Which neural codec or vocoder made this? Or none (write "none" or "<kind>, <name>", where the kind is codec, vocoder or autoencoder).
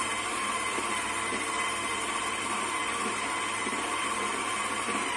none